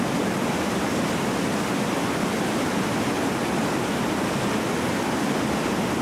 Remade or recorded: recorded